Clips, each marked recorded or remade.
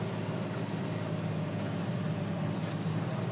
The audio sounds recorded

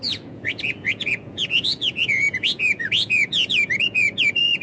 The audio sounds remade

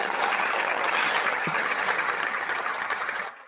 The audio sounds remade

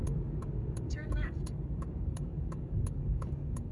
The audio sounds remade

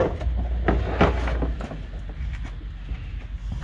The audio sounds recorded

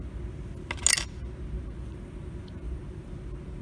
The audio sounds recorded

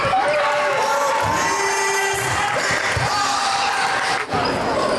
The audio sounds recorded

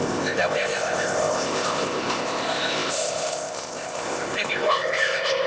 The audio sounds remade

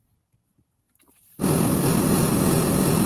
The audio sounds recorded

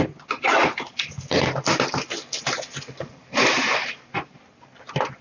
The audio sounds recorded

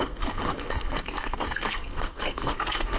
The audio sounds remade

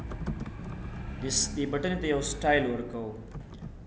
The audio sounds recorded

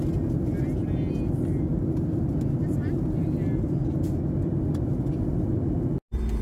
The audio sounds recorded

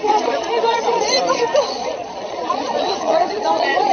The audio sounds remade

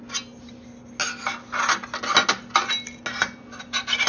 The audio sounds recorded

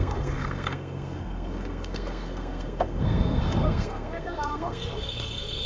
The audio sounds remade